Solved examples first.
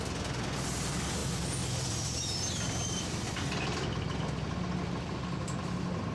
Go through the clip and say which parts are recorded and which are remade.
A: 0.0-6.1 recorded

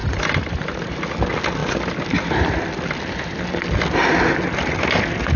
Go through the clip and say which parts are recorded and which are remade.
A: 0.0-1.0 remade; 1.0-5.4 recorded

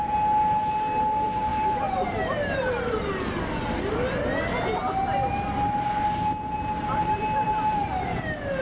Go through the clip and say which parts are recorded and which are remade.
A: 0.0-1.5 recorded; 1.5-3.1 remade; 3.1-8.6 recorded

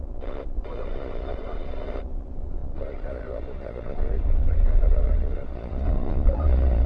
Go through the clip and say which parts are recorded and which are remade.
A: 0.0-6.9 remade

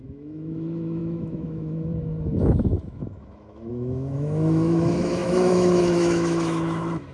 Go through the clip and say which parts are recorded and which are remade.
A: 0.0-7.1 remade

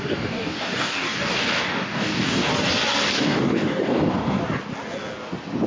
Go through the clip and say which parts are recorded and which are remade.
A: 0.0-2.5 remade; 2.5-3.1 recorded; 3.1-4.4 remade; 4.4-5.7 recorded